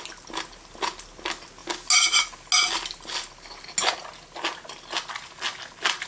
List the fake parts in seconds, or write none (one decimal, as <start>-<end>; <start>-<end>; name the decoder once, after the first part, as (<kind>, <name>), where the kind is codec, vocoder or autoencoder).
none